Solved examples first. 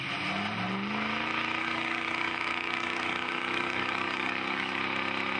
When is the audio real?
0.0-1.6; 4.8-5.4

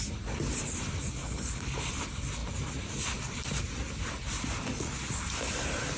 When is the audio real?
0.0-1.2; 1.9-6.0